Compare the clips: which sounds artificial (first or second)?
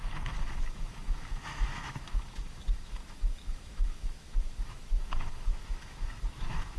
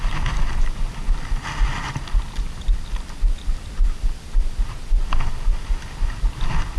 first